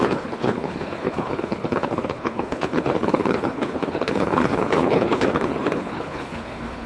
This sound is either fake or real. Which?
fake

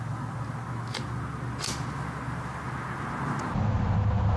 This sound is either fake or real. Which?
real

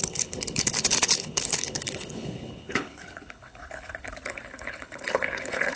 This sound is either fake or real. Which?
fake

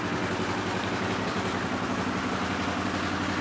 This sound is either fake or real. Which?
real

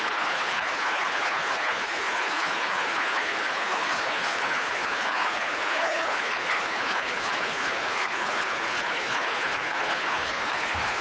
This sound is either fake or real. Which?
fake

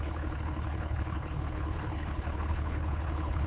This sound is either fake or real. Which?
fake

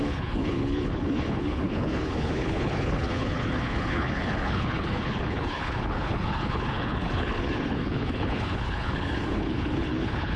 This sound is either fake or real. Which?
fake